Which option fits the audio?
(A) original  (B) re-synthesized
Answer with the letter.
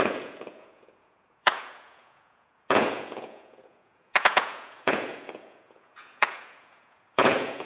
B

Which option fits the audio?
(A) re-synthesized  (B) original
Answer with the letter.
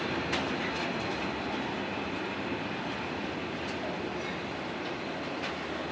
B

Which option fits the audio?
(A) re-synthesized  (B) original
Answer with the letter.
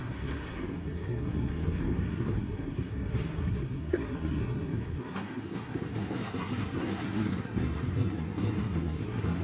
A